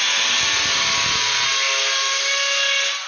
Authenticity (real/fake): real